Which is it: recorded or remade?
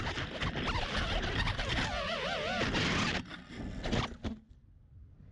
recorded